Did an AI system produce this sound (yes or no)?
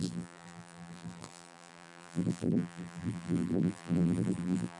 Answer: yes